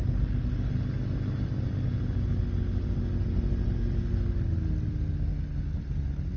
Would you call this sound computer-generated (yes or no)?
no